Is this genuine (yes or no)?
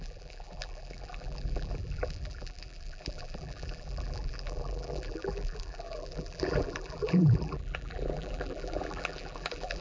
no